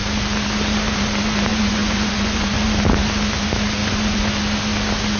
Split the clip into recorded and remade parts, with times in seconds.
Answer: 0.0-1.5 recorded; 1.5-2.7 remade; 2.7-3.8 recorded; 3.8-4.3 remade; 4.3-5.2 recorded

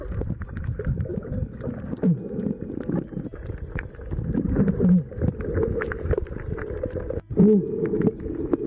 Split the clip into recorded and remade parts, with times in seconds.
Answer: 0.0-8.7 recorded

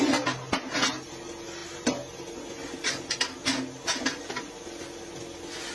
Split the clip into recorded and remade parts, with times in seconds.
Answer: 0.0-5.7 recorded